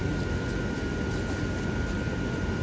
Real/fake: real